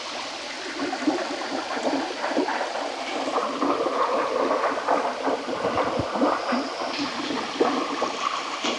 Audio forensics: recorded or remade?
recorded